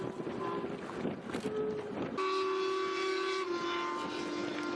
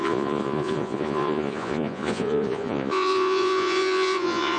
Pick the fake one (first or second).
second